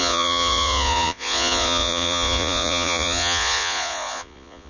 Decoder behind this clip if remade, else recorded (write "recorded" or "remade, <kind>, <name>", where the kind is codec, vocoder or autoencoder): remade, vocoder, Vocos